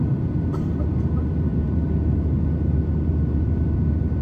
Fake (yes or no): yes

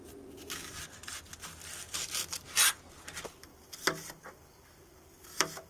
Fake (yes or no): no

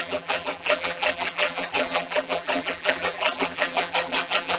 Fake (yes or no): yes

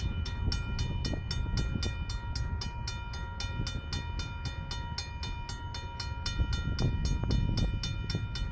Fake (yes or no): no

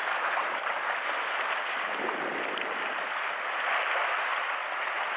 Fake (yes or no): no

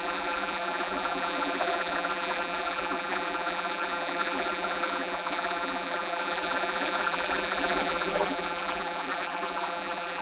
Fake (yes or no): yes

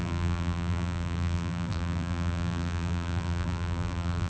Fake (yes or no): yes